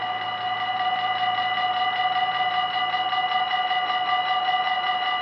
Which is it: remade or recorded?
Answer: recorded